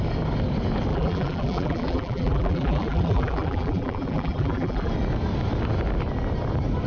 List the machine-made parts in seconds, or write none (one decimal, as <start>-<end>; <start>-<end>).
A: 0.9-4.9